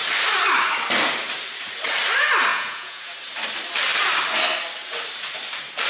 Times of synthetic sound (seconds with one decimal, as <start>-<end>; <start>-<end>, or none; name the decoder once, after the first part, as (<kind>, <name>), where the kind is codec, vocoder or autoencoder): 2.5-3.1 (vocoder, Vocos)